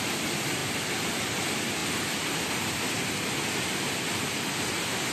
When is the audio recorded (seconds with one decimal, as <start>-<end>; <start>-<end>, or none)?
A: 0.0-5.1